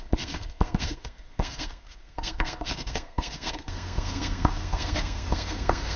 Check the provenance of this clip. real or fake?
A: fake